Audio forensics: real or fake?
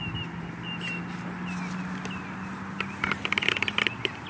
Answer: real